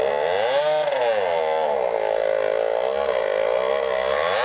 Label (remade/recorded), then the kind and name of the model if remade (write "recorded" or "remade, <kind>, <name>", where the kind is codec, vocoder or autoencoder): recorded